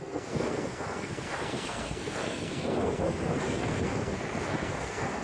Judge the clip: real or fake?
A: fake